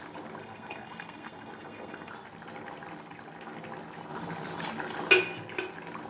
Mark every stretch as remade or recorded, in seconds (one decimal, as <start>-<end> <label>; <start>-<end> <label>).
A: 0.0-0.4 recorded; 0.4-2.1 remade; 2.1-6.1 recorded